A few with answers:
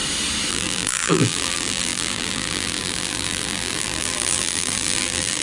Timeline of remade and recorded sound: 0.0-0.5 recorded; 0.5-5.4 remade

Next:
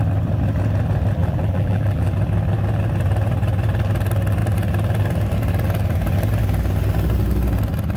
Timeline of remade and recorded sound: 0.0-1.2 recorded; 1.2-2.1 remade; 2.1-8.0 recorded

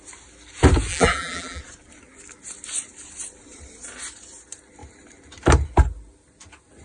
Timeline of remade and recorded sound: 0.0-0.9 recorded; 0.9-1.6 remade; 1.6-6.8 recorded

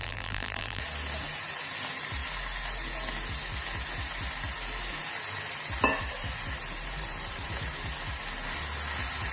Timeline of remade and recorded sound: 0.0-0.8 remade; 0.8-9.3 recorded

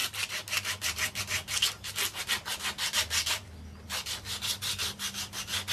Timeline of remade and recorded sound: 0.0-5.7 recorded

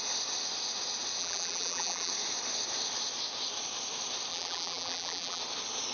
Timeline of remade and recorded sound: 0.0-1.2 recorded; 1.2-2.1 remade; 2.1-4.3 recorded; 4.3-5.4 remade; 5.4-5.9 recorded

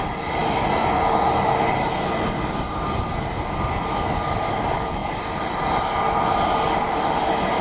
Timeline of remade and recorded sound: 0.0-5.0 recorded; 5.0-5.8 remade; 5.8-7.6 recorded

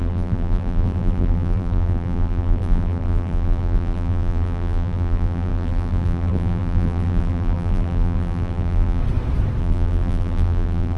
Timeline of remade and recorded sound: 0.0-9.0 remade; 9.0-9.6 recorded; 9.6-11.0 remade